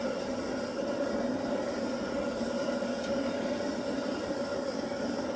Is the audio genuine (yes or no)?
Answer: yes